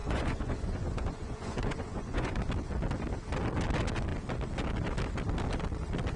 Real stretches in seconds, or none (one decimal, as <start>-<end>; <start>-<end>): 2.4-6.2